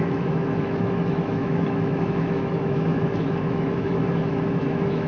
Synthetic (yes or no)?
yes